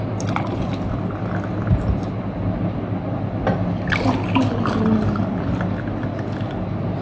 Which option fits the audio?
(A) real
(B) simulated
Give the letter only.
A